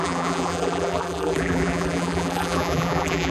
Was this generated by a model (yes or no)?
yes